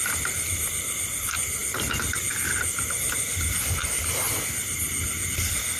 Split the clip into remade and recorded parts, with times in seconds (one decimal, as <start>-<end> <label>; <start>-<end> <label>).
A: 0.0-5.8 recorded